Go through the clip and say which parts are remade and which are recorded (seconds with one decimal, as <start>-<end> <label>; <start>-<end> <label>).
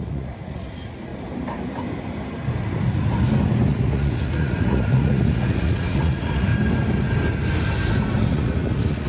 0.0-1.1 remade; 1.1-3.7 recorded; 3.7-6.5 remade; 6.5-8.2 recorded; 8.2-9.1 remade